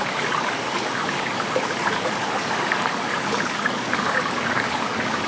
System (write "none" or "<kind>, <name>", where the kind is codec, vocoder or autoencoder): codec, DAC